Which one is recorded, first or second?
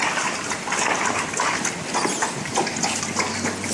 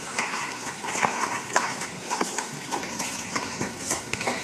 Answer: first